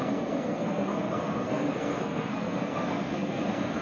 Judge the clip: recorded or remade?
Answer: remade